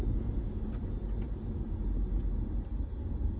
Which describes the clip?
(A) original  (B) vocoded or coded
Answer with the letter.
A